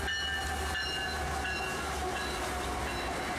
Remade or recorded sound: recorded